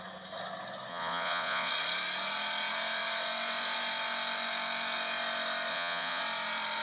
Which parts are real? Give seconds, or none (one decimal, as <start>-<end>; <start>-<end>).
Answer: 0.0-0.9; 1.7-5.7; 6.2-6.8